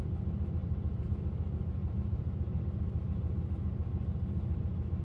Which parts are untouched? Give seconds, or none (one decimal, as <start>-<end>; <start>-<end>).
0.0-0.6; 1.1-1.8; 2.6-5.0